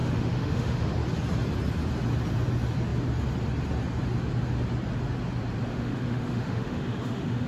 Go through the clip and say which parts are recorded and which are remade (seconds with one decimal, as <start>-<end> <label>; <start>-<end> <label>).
0.0-0.9 remade; 0.9-5.7 recorded; 5.7-7.5 remade